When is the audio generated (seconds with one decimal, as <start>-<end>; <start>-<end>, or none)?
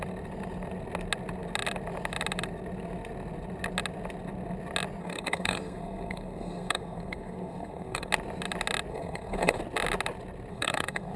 5.0-8.1; 8.9-9.6; 10.5-11.2